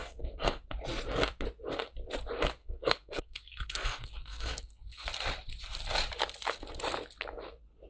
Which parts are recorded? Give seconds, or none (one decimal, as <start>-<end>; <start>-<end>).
0.6-2.6; 5.1-7.9